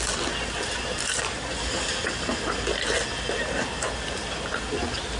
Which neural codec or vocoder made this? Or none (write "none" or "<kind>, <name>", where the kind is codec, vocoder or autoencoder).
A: none